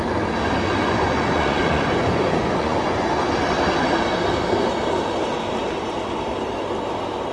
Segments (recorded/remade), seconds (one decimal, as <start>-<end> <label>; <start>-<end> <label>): 0.0-0.8 recorded; 0.8-3.2 remade; 3.2-7.3 recorded